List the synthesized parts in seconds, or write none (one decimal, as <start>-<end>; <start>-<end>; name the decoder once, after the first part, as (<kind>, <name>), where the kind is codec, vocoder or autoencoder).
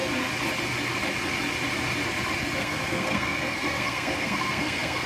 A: 2.6-5.1 (codec, SNAC)